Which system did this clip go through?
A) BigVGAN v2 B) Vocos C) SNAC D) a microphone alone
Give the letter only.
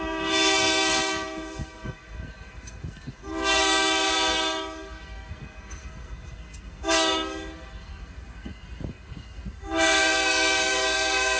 C